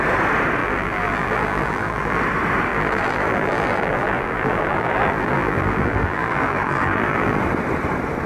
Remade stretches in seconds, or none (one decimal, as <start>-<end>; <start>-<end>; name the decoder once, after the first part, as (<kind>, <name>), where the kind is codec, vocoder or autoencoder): 0.6-2.2 (vocoder, BigVGAN v2); 2.7-7.4